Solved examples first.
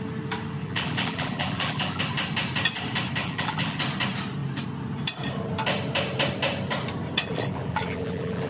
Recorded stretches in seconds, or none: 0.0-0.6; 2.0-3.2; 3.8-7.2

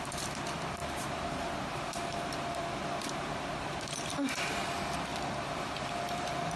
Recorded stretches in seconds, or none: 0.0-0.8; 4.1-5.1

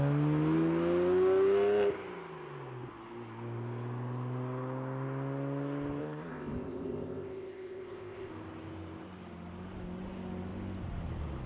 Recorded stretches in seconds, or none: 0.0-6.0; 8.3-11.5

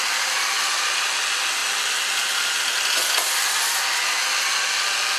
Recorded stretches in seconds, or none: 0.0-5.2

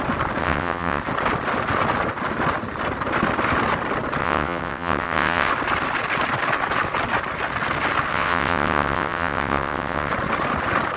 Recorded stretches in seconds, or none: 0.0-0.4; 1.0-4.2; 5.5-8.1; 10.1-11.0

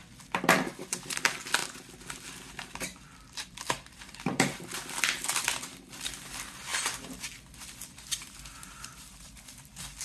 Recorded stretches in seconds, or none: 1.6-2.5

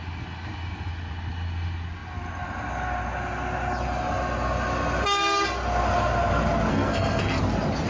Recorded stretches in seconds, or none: 0.0-6.7; 7.4-7.9